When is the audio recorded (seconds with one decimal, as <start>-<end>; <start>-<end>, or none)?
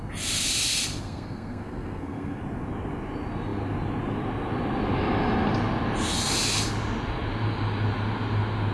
0.0-0.9; 2.4-8.7